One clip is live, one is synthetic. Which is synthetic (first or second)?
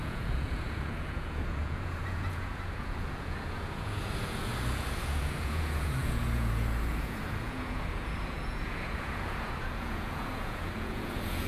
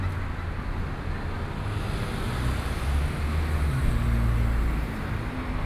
first